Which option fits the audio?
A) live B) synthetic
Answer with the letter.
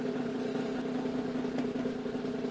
A